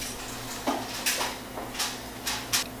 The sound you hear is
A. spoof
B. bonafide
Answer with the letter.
B